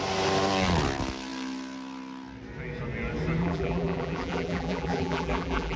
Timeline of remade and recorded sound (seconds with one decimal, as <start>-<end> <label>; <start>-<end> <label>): 0.0-3.4 recorded; 3.4-5.8 remade